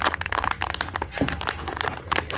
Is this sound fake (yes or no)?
no